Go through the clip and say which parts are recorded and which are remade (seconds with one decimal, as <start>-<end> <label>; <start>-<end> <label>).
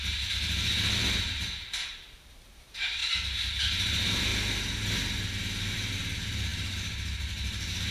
0.0-3.0 remade; 3.0-3.6 recorded; 3.6-4.3 remade; 4.3-5.7 recorded; 5.7-7.9 remade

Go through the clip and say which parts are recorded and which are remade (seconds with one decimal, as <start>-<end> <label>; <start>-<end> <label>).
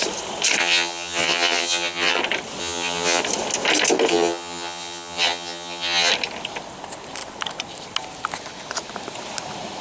0.0-0.6 recorded; 0.6-2.2 remade; 2.2-2.6 recorded; 2.6-3.2 remade; 3.2-4.1 recorded; 4.1-6.1 remade; 6.1-9.8 recorded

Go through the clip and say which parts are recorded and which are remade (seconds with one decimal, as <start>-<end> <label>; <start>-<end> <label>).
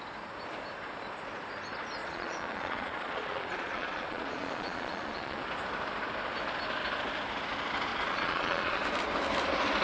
0.0-2.0 recorded; 2.0-5.4 remade; 5.4-7.9 recorded; 7.9-8.8 remade; 8.8-9.8 recorded